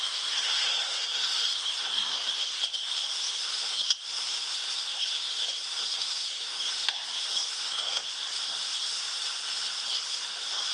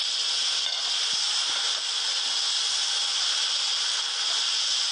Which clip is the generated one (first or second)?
first